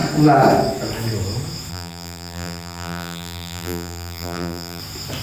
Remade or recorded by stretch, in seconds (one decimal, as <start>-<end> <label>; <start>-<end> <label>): 0.0-1.7 recorded; 1.7-4.8 remade; 4.8-5.2 recorded